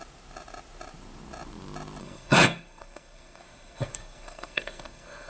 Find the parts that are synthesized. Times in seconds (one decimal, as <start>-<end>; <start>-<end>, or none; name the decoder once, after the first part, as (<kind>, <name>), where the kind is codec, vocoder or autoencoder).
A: 2.0-5.3 (codec, SNAC)